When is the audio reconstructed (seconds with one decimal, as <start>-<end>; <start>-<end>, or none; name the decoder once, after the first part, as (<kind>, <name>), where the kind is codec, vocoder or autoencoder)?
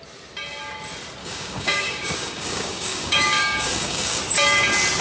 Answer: 1.2-4.2 (codec, DAC)